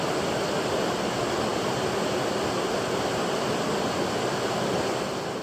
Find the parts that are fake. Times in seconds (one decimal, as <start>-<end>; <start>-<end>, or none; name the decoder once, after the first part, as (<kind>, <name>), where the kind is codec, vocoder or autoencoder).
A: none